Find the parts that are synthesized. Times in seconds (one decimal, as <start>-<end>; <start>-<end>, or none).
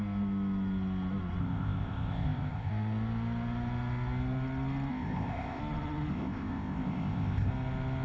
1.4-2.7; 4.9-5.6; 6.1-7.5